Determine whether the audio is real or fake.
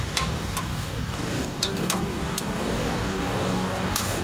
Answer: fake